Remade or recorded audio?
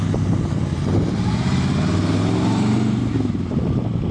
recorded